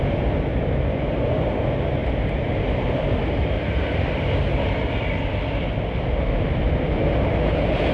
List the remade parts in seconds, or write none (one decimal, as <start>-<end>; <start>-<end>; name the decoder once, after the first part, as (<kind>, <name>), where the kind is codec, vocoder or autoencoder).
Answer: none